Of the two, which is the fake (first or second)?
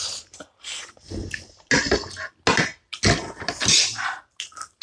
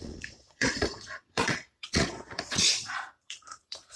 second